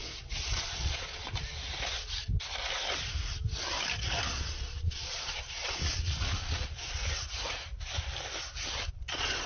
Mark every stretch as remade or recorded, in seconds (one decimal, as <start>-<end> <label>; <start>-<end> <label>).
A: 0.0-0.6 recorded; 0.6-1.3 remade; 1.3-4.3 recorded; 4.3-7.0 remade; 7.0-8.9 recorded; 8.9-9.5 remade

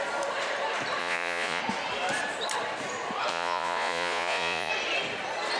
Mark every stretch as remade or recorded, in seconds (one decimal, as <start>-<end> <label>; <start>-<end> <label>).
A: 0.0-1.0 recorded; 1.0-1.6 remade; 1.6-3.3 recorded; 3.3-4.7 remade; 4.7-5.6 recorded

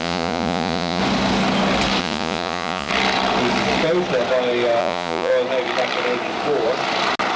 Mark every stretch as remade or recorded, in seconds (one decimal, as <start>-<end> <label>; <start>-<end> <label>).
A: 0.0-1.0 remade; 1.0-2.0 recorded; 2.0-2.9 remade; 2.9-4.8 recorded; 4.8-5.3 remade; 5.3-7.4 recorded

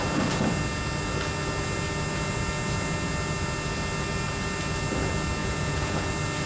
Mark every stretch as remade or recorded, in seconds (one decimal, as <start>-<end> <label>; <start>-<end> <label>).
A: 0.0-5.4 recorded; 5.4-6.1 remade; 6.1-6.5 recorded

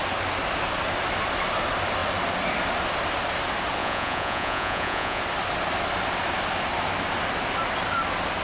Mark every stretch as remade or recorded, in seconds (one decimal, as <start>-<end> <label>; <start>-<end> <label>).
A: 0.0-3.8 recorded; 3.8-5.2 remade; 5.2-8.4 recorded